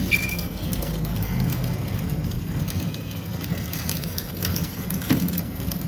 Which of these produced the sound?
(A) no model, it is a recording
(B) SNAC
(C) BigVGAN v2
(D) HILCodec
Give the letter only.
B